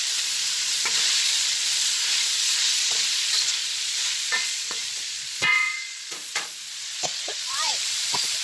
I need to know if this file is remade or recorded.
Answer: remade